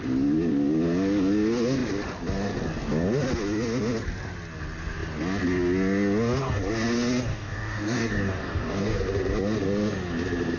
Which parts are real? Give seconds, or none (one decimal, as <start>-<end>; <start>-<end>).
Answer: 0.0-7.3; 9.0-10.6